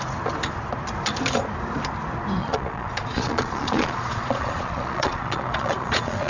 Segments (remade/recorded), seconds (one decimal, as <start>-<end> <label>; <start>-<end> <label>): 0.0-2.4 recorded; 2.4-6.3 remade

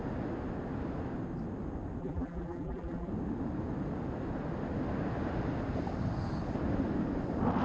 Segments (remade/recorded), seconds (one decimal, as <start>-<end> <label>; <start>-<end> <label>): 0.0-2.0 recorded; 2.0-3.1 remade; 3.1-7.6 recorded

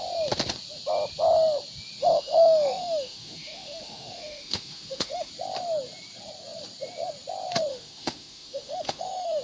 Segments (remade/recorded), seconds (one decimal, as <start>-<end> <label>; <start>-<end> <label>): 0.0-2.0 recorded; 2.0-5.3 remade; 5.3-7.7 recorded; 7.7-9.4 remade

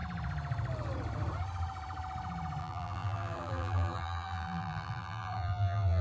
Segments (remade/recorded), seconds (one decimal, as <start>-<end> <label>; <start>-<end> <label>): 0.0-2.6 recorded; 2.6-6.0 remade

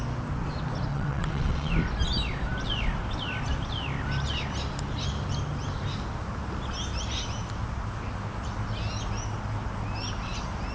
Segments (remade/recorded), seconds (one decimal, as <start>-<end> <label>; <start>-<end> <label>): 0.0-0.9 recorded; 0.9-1.7 remade; 1.7-10.7 recorded

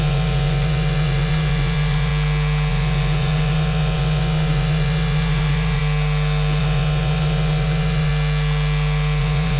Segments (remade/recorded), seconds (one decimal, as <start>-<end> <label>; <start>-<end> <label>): 0.0-2.1 remade; 2.1-2.7 recorded; 2.7-5.8 remade; 5.8-6.6 recorded; 6.6-8.1 remade; 8.1-9.2 recorded; 9.2-9.6 remade

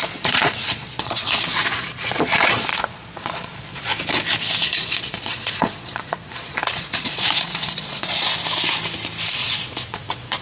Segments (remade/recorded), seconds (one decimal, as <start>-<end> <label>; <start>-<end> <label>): 0.0-3.9 remade; 3.9-4.6 recorded; 4.6-8.3 remade; 8.3-9.3 recorded; 9.3-10.4 remade

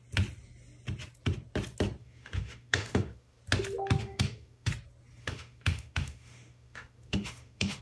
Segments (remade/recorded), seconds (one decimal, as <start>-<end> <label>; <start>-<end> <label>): 0.0-2.0 recorded; 2.0-3.4 remade; 3.4-4.0 recorded; 4.0-4.7 remade; 4.7-5.2 recorded; 5.2-7.8 remade